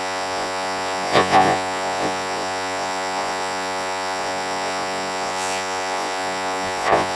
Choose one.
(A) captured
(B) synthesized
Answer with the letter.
B